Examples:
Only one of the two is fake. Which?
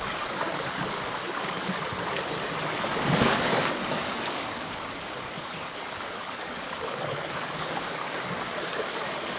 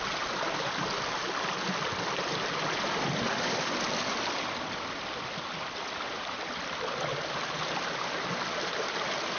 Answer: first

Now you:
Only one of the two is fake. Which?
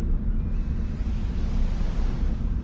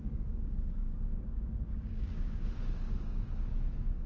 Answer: second